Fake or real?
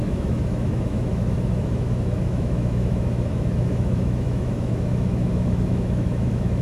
fake